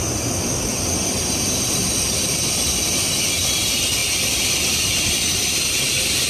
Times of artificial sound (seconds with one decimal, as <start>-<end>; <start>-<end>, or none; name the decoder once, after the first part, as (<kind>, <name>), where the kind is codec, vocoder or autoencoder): 0.7-2.1 (vocoder, BigVGAN v2)